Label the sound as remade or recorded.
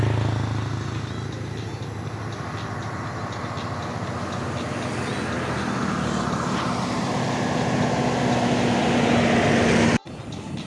recorded